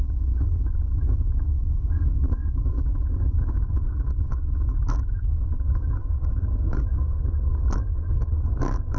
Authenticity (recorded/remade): remade